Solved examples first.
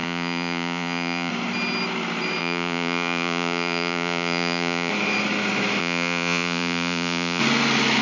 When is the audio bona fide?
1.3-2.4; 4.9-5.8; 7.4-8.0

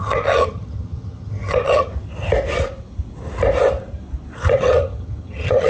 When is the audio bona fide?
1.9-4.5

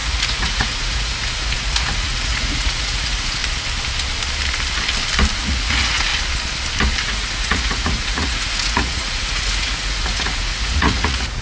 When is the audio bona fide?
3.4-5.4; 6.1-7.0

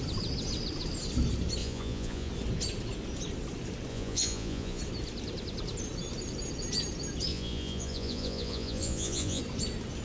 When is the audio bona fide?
0.0-1.6; 2.3-3.9; 4.8-7.3; 9.4-10.0

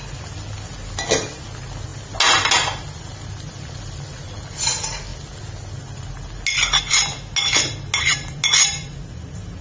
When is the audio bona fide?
0.0-9.6